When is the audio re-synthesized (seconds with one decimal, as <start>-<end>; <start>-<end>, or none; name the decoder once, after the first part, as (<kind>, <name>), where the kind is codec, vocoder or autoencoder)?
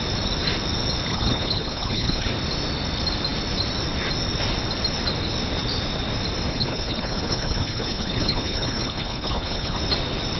1.1-2.3 (codec, HILCodec); 6.5-9.8